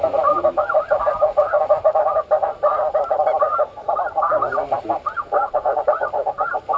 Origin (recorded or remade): remade